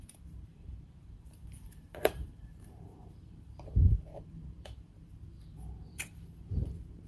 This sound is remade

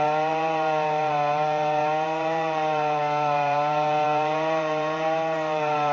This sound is remade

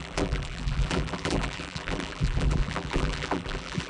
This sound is remade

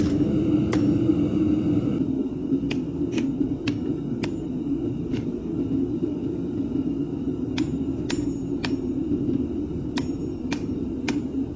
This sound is recorded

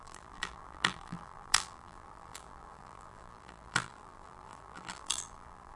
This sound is remade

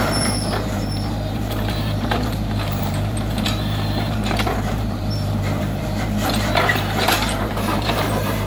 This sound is remade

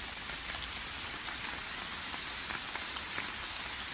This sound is recorded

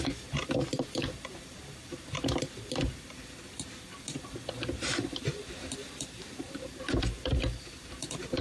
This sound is remade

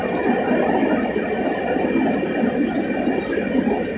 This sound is recorded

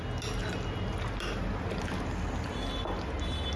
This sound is recorded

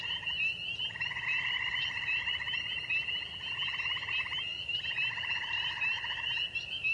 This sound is recorded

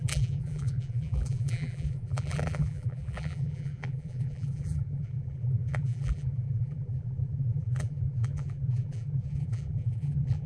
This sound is remade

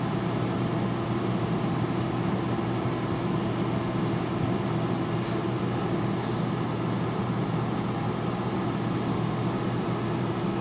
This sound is recorded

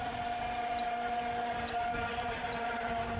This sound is remade